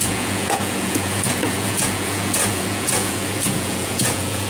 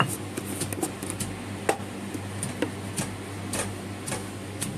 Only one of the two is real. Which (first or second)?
second